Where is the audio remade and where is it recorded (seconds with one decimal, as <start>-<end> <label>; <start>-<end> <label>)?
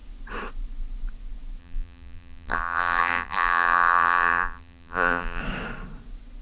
0.0-1.6 recorded; 1.6-5.4 remade; 5.4-6.4 recorded